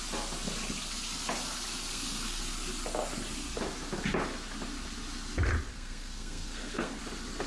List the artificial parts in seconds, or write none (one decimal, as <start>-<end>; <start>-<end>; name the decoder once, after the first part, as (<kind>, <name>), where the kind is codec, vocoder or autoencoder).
1.9-2.4 (codec, SNAC); 5.7-7.0